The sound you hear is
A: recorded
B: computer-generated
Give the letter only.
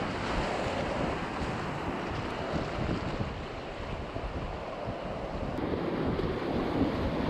A